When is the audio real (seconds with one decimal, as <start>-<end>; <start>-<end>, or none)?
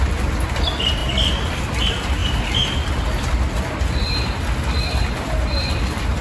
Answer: 0.0-6.2